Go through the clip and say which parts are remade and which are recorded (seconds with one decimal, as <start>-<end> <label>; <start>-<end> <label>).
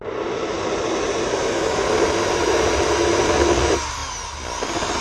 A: 0.0-5.0 recorded